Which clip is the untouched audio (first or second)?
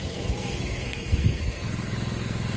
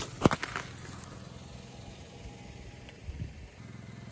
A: second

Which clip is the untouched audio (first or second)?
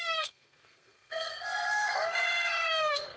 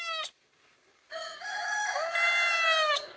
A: second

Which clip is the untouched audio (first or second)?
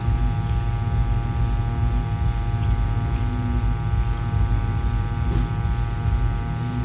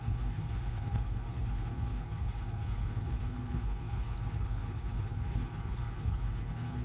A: first